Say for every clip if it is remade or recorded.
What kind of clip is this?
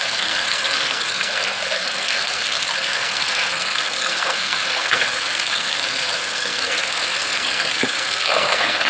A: remade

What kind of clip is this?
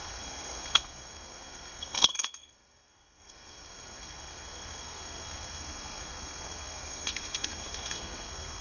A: remade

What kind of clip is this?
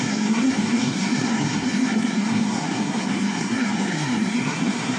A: remade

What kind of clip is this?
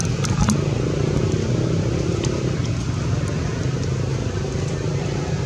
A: recorded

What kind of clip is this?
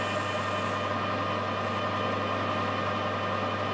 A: recorded